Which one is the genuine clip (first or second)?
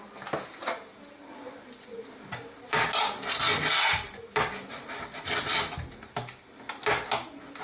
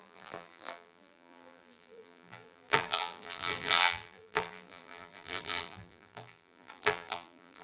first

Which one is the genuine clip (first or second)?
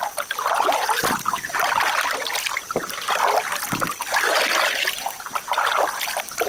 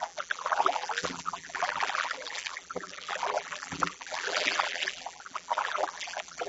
first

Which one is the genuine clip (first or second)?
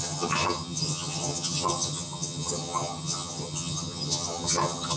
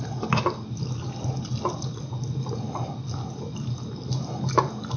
second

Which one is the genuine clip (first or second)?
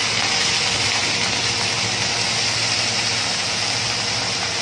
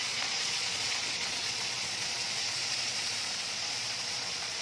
first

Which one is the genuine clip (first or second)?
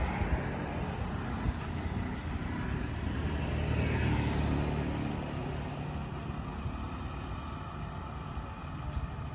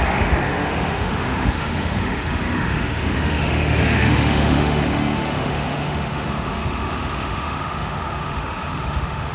first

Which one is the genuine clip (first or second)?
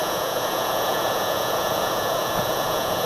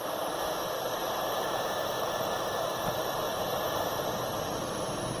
second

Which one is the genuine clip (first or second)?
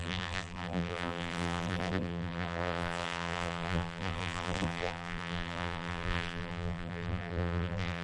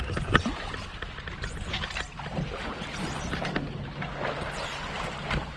second